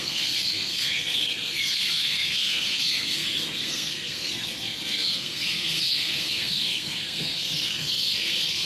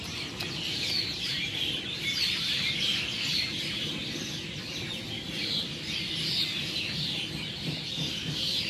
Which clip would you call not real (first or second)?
first